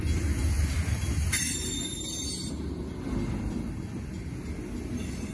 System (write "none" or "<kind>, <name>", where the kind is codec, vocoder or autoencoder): none